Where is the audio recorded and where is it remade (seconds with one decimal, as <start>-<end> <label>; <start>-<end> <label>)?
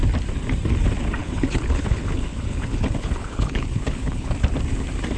0.0-1.2 recorded; 1.2-4.3 remade; 4.3-5.2 recorded